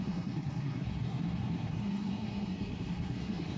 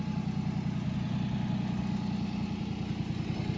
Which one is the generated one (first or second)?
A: first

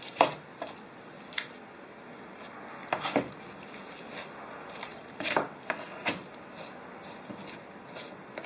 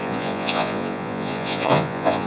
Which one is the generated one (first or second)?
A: second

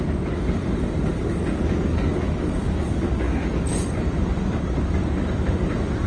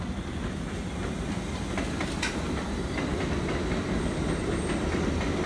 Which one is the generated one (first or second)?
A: first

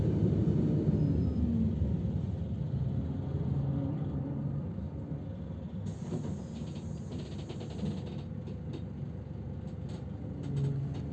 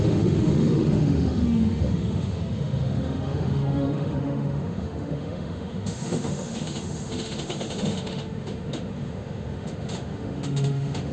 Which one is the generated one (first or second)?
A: second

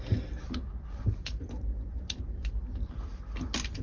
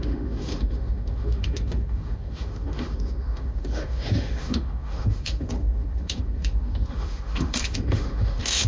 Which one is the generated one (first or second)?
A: second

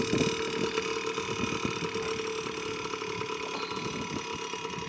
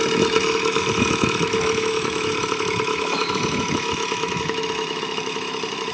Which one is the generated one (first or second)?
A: second